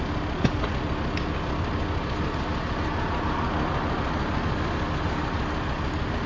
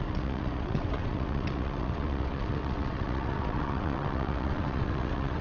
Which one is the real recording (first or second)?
first